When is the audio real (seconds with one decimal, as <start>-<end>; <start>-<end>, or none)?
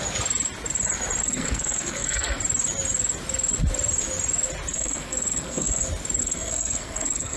0.0-1.2; 2.4-4.7; 5.8-6.2